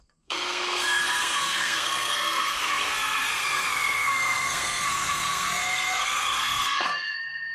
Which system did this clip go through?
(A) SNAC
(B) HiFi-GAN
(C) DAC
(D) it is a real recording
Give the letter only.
A